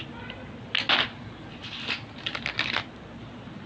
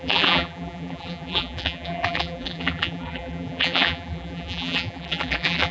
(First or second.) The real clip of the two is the first